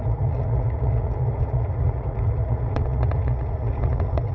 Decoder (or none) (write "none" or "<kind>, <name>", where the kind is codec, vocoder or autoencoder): vocoder, Vocos